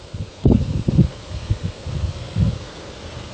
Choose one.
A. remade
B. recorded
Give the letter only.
A